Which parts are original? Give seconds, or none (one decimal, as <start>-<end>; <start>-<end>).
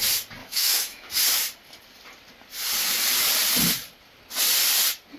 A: 0.0-0.4; 1.1-5.2